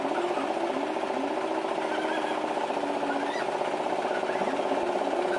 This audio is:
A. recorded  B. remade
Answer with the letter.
A